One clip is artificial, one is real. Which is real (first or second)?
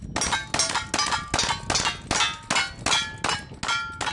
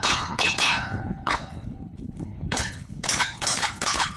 first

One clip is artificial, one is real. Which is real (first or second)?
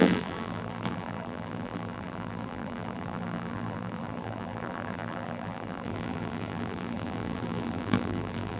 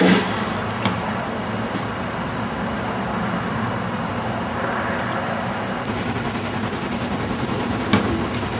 second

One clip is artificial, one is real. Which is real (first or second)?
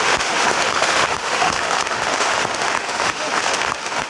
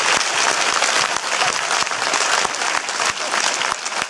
second